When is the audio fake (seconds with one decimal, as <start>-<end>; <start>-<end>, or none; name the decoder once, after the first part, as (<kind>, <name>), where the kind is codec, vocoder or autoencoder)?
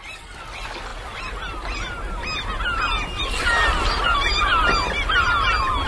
none